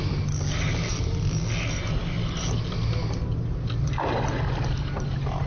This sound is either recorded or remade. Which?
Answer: recorded